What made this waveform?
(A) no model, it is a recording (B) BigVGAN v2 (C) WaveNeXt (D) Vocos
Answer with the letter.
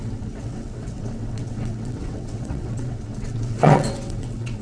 C